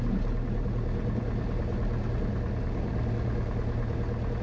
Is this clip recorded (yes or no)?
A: yes